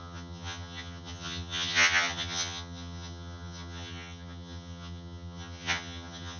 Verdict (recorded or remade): remade